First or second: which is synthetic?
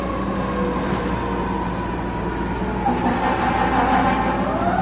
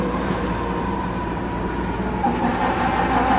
second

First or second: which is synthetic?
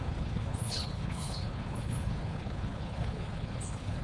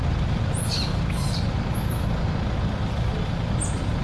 first